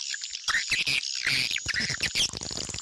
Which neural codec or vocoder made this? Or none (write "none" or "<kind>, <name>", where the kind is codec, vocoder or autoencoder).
none